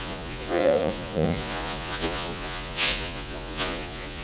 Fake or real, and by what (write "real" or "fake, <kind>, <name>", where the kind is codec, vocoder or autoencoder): fake, vocoder, Vocos